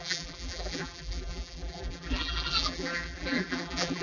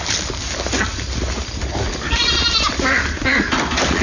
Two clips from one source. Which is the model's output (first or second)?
first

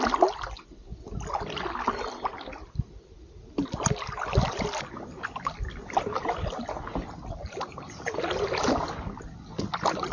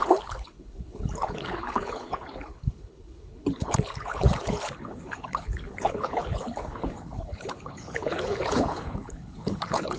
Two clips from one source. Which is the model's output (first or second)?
second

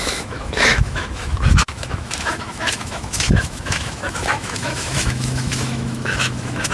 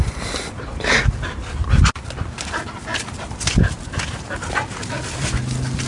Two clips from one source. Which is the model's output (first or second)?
first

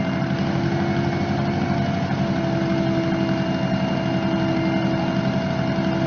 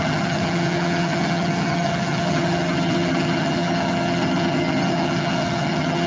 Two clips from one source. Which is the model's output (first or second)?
second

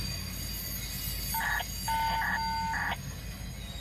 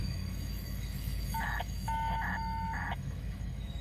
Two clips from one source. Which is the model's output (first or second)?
second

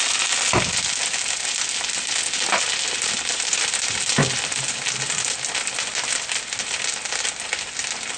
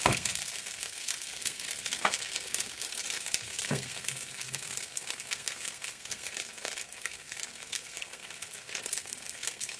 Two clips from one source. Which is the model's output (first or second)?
second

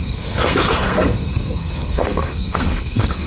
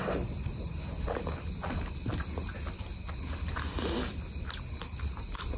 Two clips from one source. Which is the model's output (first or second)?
first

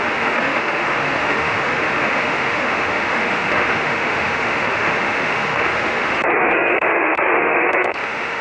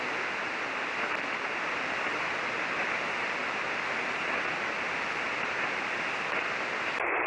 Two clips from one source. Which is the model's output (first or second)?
first